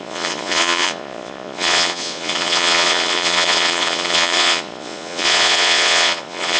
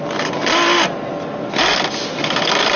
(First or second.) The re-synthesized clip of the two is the first